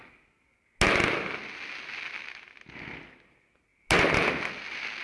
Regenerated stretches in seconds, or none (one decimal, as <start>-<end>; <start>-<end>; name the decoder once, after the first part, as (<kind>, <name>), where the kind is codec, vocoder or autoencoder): none